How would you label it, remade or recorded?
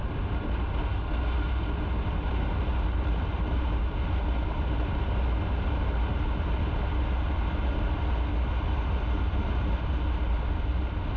recorded